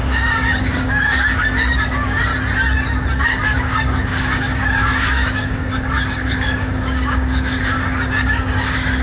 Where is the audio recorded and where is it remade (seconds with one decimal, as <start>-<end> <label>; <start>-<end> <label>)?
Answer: 0.0-2.3 remade; 2.3-3.2 recorded; 3.2-9.0 remade